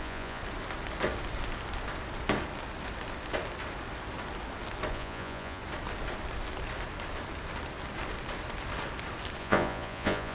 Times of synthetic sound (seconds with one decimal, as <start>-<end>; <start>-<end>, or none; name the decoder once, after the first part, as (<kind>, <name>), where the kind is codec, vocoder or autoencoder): 0.0-0.4 (vocoder, Vocos); 4.9-5.6; 9.4-10.3